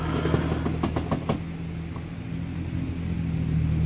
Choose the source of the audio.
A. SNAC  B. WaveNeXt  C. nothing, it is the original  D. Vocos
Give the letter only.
C